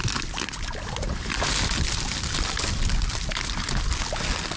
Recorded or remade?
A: recorded